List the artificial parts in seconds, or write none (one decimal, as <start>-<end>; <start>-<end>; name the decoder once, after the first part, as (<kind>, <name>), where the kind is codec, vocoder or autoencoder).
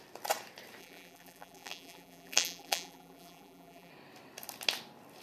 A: 0.8-3.9 (vocoder, BigVGAN v2)